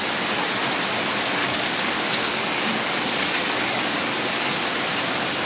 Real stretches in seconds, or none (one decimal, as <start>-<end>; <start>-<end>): 0.0-1.4; 4.7-5.5